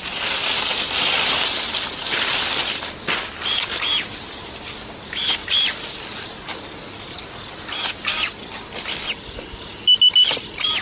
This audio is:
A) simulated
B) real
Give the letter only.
B